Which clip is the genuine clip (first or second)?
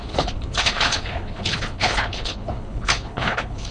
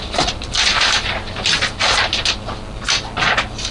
second